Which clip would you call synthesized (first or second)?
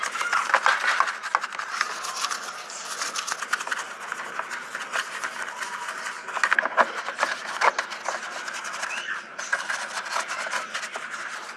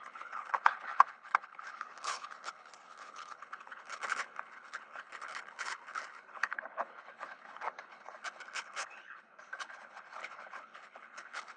second